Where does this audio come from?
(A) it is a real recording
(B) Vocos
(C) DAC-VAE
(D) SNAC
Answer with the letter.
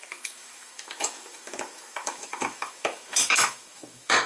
C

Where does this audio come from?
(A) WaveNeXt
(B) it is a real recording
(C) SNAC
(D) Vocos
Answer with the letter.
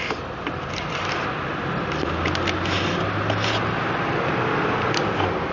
B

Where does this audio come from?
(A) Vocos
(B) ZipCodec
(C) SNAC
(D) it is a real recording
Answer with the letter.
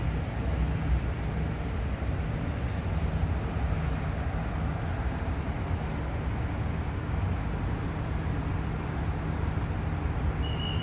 D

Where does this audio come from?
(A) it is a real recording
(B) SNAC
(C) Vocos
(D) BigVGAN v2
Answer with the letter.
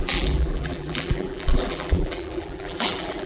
D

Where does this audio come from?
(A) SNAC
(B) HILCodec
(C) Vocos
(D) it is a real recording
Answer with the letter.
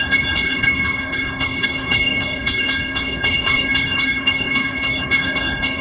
B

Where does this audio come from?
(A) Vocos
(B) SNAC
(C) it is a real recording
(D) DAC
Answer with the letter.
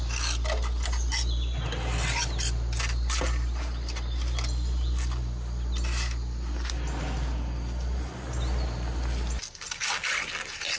C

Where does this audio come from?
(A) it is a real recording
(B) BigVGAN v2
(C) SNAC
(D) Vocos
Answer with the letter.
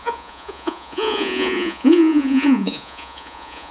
D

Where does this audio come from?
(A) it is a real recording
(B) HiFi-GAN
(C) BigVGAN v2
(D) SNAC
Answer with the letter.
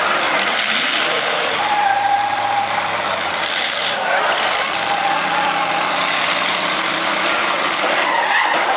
C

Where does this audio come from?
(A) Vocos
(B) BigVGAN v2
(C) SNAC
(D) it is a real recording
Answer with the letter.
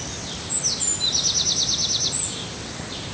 D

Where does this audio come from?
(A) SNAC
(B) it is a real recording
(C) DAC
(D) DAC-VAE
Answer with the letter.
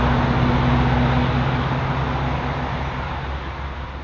B